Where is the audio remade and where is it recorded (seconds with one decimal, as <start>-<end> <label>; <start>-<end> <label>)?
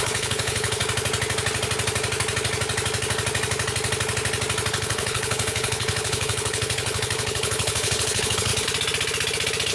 0.0-0.8 remade; 0.8-4.7 recorded; 4.7-8.5 remade; 8.5-9.7 recorded